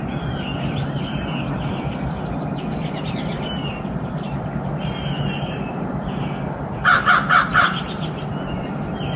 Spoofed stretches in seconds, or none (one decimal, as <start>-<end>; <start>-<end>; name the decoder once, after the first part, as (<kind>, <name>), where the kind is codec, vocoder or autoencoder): 7.5-8.3 (vocoder, BigVGAN v2)